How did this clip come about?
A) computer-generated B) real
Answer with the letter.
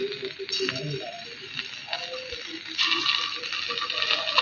B